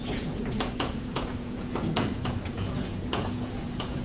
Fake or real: fake